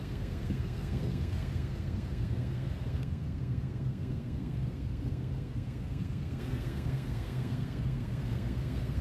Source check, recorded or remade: remade